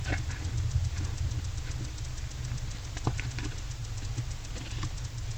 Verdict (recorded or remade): recorded